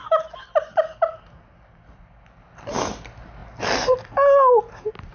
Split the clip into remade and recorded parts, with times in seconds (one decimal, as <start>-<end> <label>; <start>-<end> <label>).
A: 0.0-5.1 recorded